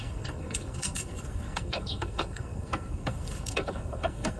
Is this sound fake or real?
fake